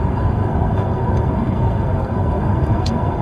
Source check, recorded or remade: remade